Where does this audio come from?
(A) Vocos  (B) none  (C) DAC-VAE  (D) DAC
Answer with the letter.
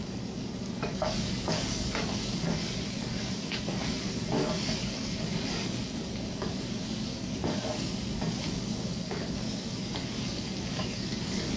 D